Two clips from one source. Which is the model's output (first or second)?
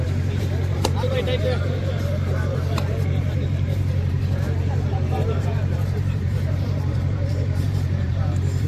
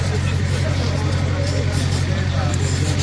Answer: first